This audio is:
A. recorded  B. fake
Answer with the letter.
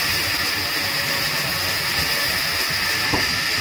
A